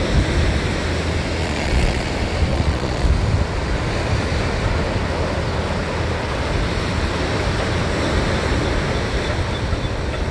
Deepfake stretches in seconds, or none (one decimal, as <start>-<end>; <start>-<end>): 1.4-2.1; 2.5-3.1